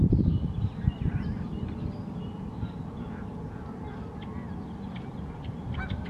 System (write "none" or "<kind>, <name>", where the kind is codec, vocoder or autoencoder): none